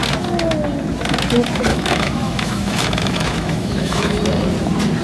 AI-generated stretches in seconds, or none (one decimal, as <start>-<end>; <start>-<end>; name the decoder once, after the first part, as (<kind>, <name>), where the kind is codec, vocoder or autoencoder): 1.7-4.2 (autoencoder, DAC-VAE)